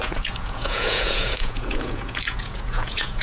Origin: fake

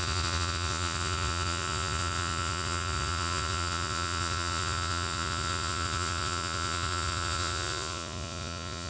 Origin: fake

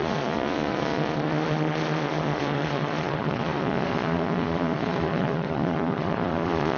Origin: fake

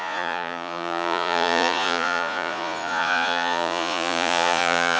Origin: fake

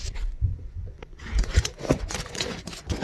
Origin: fake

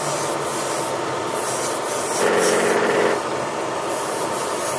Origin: real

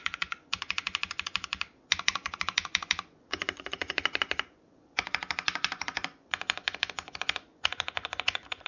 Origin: fake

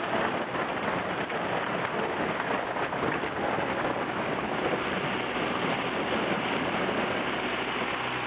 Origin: real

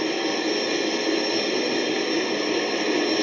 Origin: real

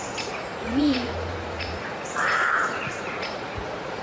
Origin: fake